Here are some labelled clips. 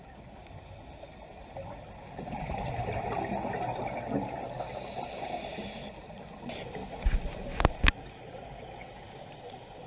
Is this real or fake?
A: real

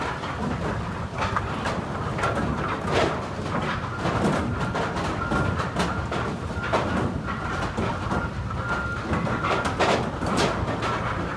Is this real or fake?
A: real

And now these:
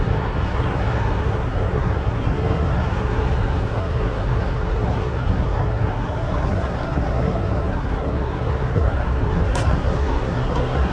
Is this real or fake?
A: fake